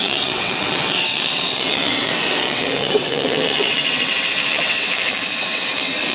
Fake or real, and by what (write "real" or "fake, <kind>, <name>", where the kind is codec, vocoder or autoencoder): fake, vocoder, WaveNeXt